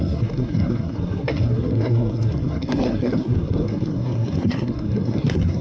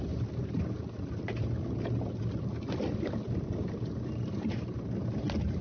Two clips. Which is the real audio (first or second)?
second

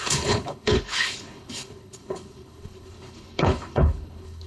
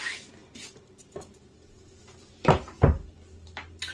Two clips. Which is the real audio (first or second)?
second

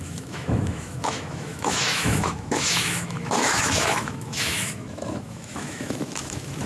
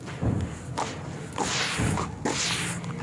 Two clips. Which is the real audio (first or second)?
second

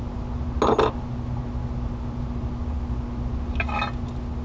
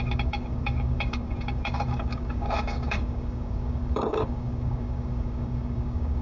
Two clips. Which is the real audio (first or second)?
first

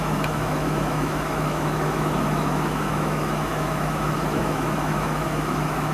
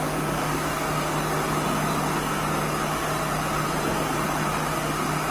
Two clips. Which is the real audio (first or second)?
second